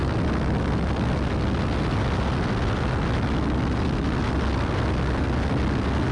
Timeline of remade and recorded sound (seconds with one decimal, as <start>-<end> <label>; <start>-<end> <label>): 0.0-1.3 remade; 1.3-6.1 recorded

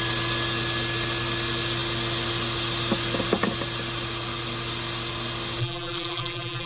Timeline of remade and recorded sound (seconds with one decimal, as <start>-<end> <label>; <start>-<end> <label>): 0.0-5.6 recorded; 5.6-6.7 remade

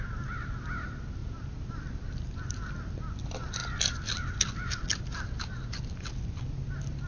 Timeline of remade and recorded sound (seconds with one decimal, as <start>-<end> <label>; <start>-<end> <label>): 0.0-1.2 recorded; 1.2-2.0 remade; 2.0-7.1 recorded

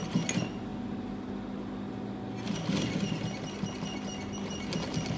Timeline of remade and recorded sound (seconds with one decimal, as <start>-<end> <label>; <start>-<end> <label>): 0.0-5.2 recorded

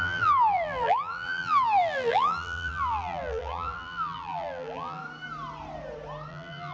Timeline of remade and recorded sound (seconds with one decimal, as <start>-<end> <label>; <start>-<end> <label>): 0.0-5.0 remade; 5.0-6.3 recorded; 6.3-6.7 remade

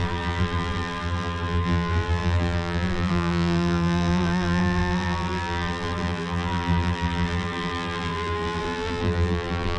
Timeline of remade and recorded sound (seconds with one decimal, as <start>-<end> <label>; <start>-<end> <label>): 0.0-9.8 remade

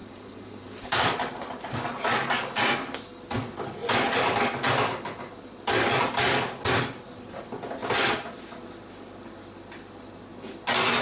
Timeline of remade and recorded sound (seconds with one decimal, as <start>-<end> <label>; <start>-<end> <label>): 0.0-1.8 remade; 1.8-7.8 recorded; 7.8-8.3 remade; 8.3-11.0 recorded